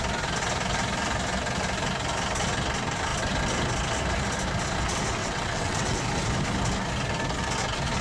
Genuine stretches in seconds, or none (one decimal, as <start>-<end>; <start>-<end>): 0.0-5.2; 6.0-8.0